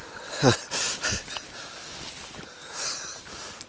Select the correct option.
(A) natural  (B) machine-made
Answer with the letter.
A